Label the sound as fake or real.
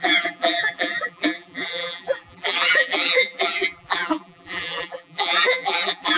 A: fake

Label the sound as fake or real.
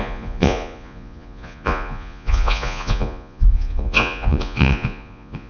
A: fake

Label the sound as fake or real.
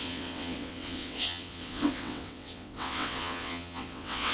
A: fake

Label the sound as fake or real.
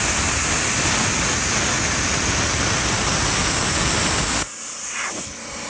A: real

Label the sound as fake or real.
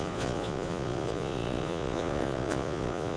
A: fake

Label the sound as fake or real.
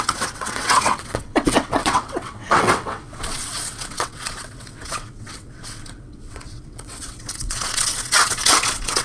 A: fake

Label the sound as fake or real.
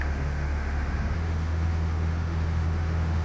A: fake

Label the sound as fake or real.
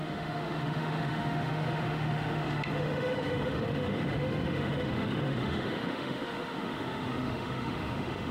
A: fake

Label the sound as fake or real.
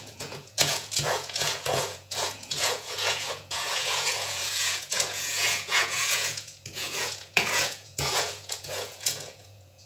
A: fake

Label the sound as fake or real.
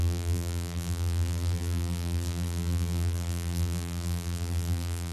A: fake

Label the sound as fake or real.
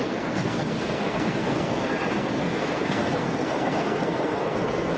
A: fake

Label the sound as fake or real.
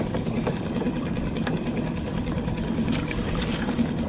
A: fake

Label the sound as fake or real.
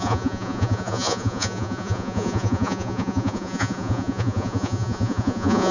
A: fake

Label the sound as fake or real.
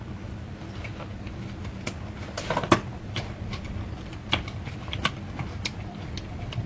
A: real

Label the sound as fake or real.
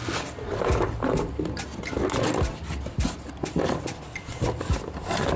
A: real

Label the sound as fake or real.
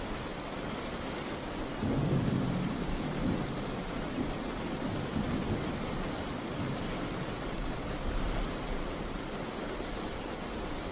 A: real